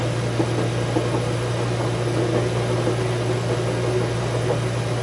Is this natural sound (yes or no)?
yes